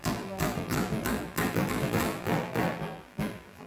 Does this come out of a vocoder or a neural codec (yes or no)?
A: yes